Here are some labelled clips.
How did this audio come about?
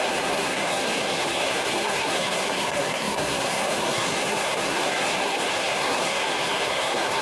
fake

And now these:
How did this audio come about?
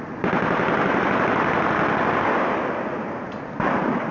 real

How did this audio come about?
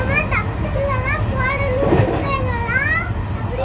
real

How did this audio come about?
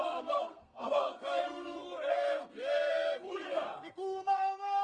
fake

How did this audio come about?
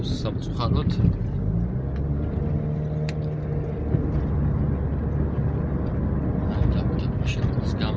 real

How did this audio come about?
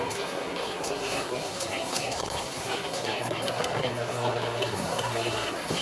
fake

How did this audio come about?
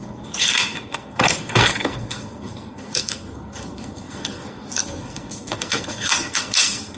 fake